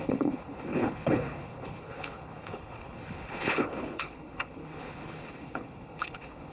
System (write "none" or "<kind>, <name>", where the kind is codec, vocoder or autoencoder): codec, HILCodec